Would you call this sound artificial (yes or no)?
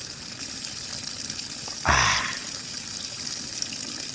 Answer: no